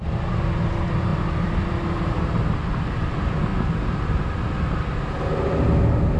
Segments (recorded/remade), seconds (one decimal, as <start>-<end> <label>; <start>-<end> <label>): 0.0-6.2 recorded